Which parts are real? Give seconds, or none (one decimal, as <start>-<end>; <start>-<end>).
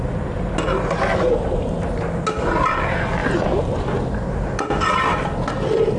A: 0.0-6.0